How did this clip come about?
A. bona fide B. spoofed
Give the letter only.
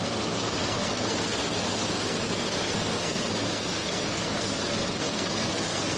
B